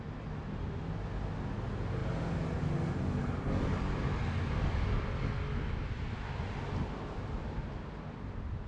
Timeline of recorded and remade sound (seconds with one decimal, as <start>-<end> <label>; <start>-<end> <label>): 0.0-8.7 recorded